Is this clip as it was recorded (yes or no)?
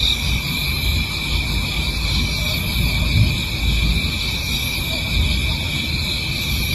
yes